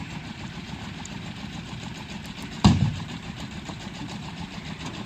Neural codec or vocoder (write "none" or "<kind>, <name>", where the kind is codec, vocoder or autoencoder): vocoder, BigVGAN v2